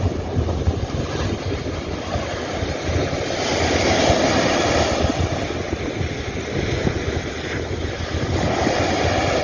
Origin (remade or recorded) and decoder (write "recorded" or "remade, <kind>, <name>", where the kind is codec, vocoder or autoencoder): recorded